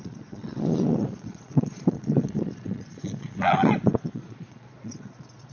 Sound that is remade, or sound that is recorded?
remade